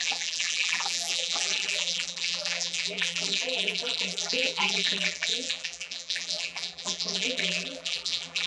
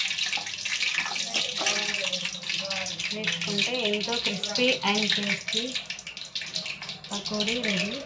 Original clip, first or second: second